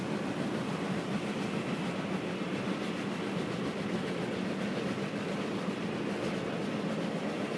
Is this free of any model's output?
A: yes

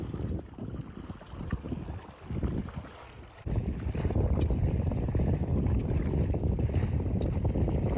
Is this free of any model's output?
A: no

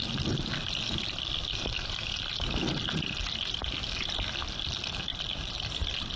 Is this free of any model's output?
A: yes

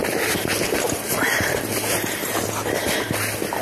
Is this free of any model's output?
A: yes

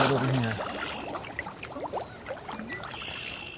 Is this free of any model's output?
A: yes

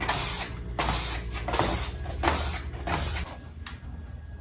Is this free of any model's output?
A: yes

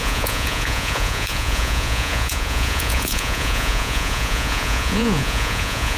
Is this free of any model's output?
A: no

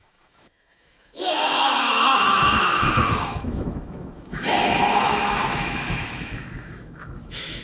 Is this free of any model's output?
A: no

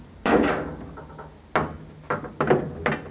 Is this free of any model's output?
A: yes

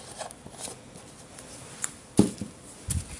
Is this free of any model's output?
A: yes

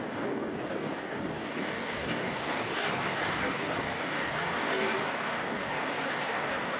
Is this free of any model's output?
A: no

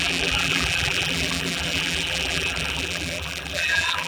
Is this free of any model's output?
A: no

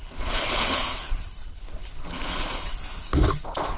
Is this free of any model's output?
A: no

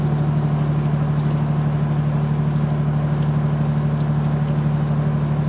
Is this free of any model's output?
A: yes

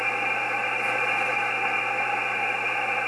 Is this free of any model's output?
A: yes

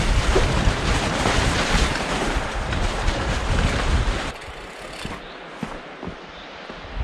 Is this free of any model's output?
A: yes